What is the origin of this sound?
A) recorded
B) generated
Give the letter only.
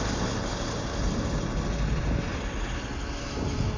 A